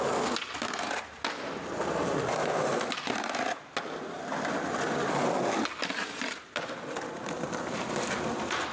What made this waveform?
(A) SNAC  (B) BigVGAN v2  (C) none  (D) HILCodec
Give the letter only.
C